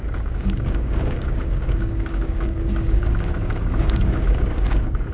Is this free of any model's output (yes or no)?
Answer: no